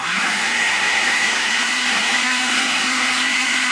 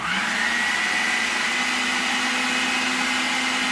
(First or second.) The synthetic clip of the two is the first